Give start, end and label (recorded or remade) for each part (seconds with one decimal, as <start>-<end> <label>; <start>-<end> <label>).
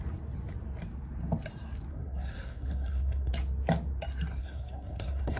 0.0-1.9 recorded; 1.9-3.3 remade; 3.3-4.4 recorded; 4.4-5.4 remade